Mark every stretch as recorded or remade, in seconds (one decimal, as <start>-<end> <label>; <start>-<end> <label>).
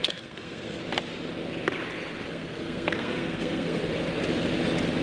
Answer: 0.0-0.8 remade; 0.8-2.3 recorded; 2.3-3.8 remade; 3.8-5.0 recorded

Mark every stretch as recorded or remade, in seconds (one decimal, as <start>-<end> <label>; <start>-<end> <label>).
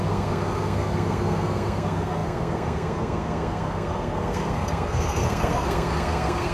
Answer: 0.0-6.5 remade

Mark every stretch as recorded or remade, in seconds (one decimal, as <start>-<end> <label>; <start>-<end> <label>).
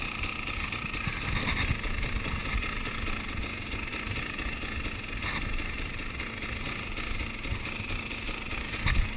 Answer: 0.0-9.2 recorded